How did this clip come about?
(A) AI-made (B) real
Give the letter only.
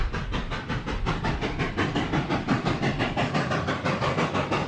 B